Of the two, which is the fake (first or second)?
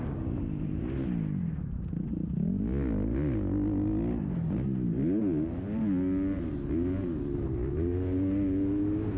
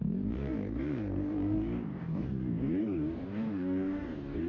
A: second